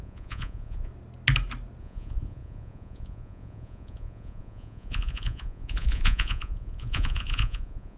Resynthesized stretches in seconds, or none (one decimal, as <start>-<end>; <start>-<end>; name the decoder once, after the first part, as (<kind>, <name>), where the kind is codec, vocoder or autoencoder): 0.0-0.9 (vocoder, Vocos); 1.8-8.0